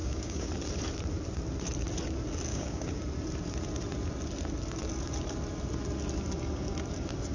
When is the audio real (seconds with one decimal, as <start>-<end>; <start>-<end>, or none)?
0.5-2.5; 3.0-7.3